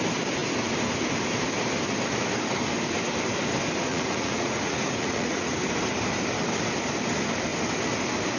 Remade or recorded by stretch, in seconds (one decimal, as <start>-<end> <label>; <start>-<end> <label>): 0.0-3.9 recorded; 3.9-5.5 remade; 5.5-8.4 recorded